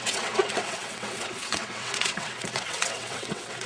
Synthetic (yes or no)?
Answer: yes